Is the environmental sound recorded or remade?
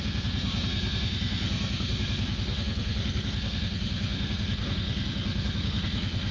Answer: remade